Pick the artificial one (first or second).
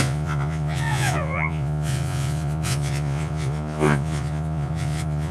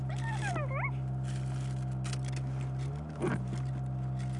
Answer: first